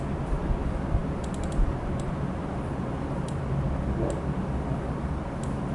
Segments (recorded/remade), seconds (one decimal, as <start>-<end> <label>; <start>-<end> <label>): 0.0-5.7 recorded